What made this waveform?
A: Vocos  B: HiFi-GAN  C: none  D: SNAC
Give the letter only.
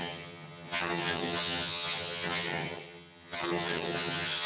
B